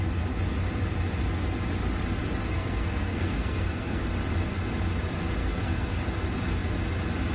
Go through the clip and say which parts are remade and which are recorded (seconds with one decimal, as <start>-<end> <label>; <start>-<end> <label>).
0.0-2.5 recorded; 2.5-4.0 remade; 4.0-5.4 recorded; 5.4-6.0 remade; 6.0-7.3 recorded